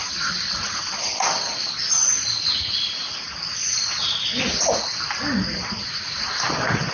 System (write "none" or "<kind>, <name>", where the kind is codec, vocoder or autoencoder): none